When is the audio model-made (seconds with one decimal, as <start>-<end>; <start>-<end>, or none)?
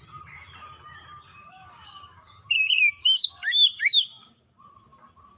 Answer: 1.3-4.5